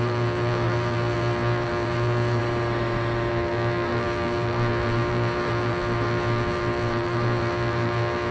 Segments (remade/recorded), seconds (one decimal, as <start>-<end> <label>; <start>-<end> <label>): 0.0-2.4 remade; 2.4-3.3 recorded; 3.3-8.3 remade